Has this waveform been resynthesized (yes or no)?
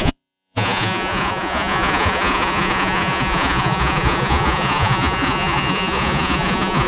yes